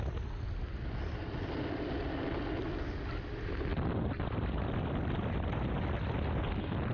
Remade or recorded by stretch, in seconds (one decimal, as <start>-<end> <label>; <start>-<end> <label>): 0.0-3.7 recorded; 3.7-4.9 remade; 4.9-6.9 recorded